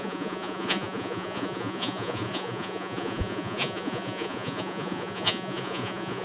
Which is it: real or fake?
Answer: fake